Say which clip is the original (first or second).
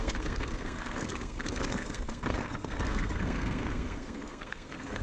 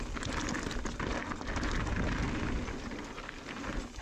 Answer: second